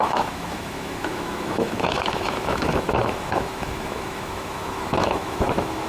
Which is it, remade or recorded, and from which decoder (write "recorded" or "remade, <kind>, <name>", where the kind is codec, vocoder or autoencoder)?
remade, autoencoder, DAC-VAE